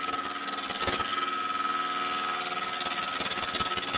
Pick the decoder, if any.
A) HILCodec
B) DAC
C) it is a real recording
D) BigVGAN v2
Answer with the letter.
C